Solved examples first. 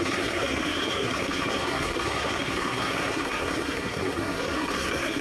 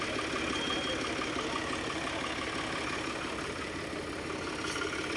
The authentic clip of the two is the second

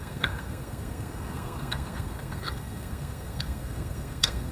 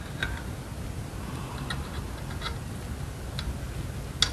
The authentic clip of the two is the second